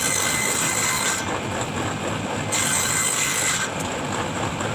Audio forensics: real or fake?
real